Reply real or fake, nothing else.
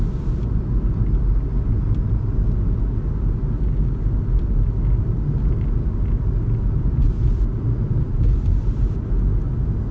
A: real